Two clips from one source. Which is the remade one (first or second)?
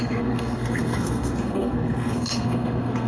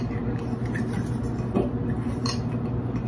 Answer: first